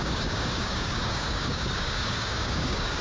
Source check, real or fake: fake